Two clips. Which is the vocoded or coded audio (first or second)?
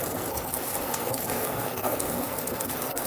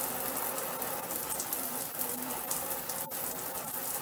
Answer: first